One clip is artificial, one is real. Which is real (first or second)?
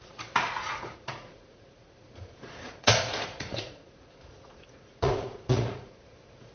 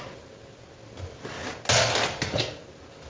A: second